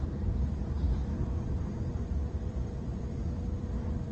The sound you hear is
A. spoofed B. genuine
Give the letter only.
A